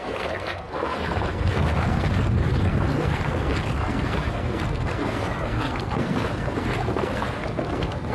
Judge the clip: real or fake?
fake